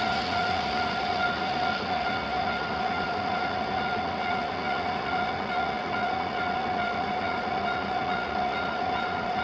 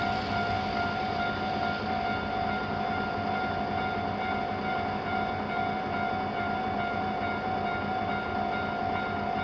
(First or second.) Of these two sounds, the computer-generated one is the first